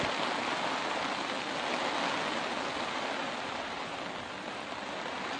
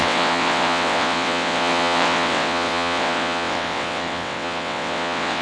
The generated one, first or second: second